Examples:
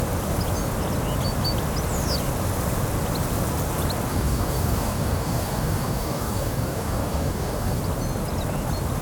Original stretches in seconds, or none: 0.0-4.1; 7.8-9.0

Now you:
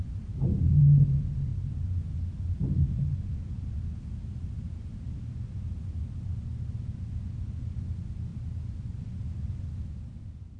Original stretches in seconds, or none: 0.0-1.5; 2.0-10.6

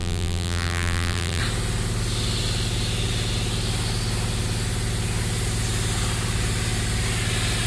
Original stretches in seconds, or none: 1.4-7.7

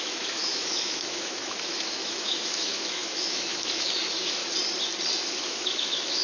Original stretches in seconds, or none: 4.4-5.4

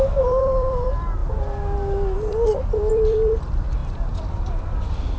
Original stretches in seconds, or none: 1.2-2.9